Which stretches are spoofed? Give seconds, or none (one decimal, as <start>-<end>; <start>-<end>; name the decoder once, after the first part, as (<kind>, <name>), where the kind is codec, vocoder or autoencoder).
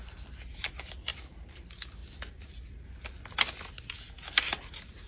none